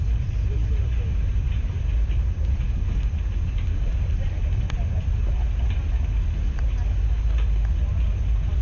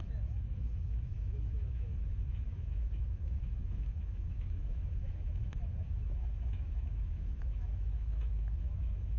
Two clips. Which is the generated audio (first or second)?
second